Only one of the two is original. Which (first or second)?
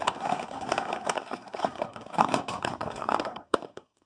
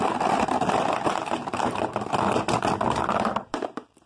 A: second